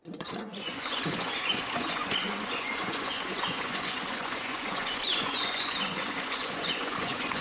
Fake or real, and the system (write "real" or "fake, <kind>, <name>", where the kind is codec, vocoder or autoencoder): fake, vocoder, Vocos